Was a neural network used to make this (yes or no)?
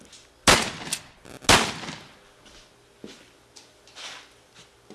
no